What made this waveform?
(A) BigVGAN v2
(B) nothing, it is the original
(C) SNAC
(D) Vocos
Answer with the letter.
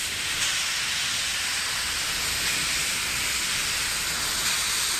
B